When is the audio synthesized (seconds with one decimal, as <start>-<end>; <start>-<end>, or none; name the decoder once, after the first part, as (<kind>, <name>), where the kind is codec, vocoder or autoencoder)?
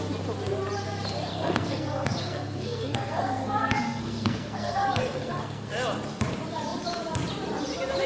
1.3-5.7 (codec, SNAC)